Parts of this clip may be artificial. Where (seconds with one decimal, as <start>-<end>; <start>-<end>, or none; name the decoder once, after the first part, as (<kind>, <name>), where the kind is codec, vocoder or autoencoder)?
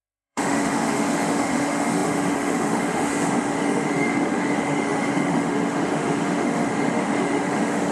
0.0-7.9 (autoencoder, DAC-VAE)